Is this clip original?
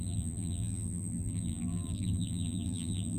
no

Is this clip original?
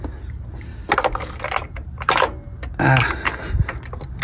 yes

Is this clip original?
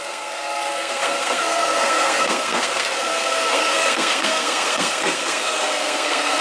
no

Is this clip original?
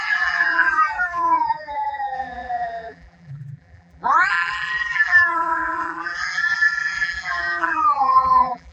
no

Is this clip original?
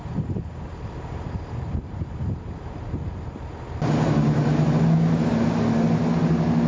yes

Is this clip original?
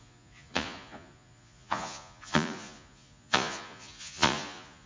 no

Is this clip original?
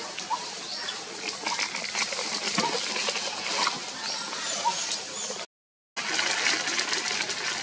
yes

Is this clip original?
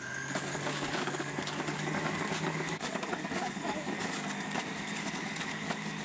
no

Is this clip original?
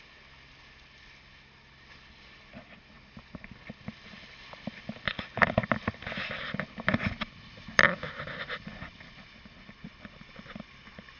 yes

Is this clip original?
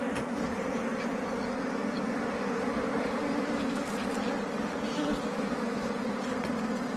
yes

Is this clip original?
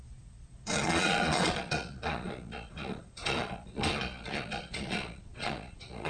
no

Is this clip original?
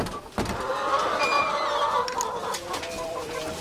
yes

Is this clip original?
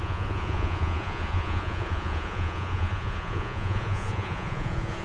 no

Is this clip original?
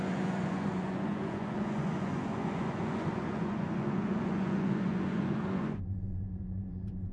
no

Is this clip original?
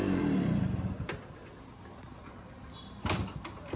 yes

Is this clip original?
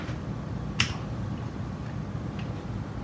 yes